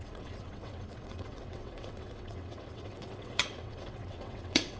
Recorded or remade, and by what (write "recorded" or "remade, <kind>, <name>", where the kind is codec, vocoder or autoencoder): remade, vocoder, WaveNeXt